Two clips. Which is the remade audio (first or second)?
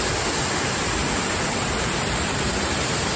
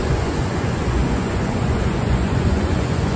second